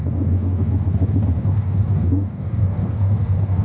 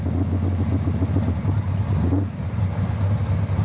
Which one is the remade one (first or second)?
first